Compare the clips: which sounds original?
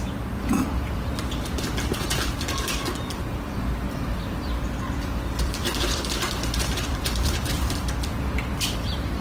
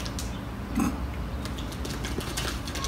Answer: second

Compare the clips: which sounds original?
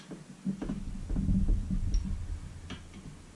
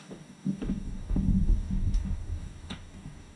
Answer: first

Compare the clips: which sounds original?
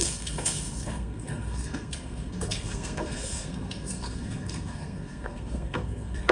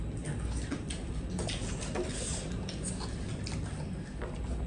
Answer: second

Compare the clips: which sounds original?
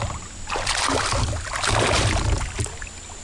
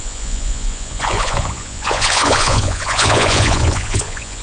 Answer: first